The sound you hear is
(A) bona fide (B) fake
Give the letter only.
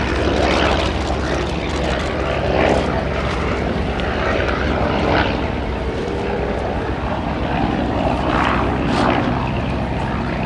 B